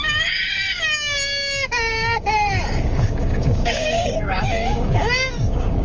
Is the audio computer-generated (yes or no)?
yes